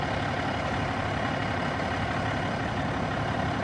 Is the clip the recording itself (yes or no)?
yes